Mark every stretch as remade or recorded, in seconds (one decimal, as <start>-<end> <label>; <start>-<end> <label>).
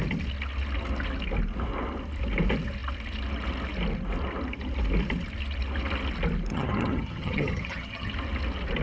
0.0-6.5 recorded; 6.5-8.1 remade; 8.1-8.8 recorded